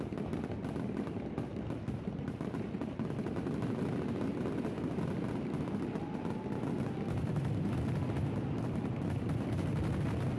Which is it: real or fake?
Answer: real